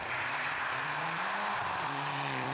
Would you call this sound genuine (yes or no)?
no